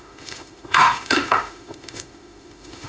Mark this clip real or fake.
fake